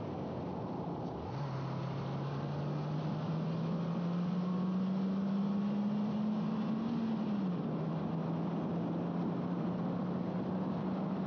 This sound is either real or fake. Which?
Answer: real